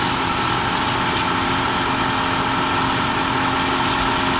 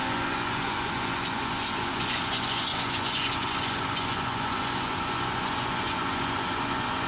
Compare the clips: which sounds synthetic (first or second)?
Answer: second